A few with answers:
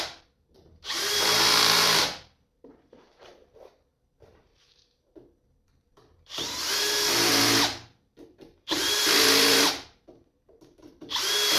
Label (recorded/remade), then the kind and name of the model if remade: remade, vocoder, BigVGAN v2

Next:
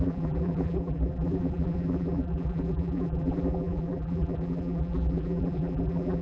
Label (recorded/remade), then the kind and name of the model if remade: remade, vocoder, BigVGAN v2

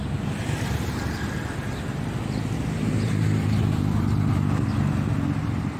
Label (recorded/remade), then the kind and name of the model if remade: recorded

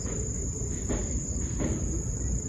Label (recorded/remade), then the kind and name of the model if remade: remade, vocoder, BigVGAN v2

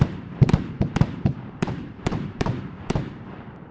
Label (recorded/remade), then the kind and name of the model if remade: remade, vocoder, BigVGAN v2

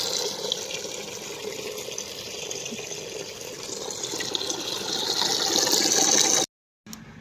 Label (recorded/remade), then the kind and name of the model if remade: recorded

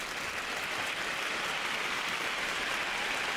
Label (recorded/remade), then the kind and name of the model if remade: recorded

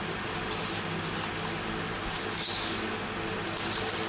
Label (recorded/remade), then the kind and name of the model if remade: recorded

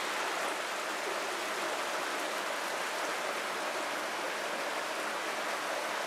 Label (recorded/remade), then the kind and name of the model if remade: recorded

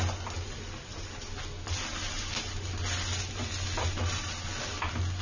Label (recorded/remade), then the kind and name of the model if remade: recorded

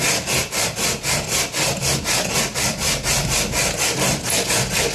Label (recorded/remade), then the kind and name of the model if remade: remade, vocoder, BigVGAN v2